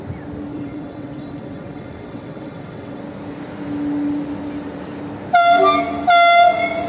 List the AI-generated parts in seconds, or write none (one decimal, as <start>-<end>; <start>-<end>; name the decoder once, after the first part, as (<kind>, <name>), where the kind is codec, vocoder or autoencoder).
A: 0.5-3.0 (vocoder, WaveNeXt)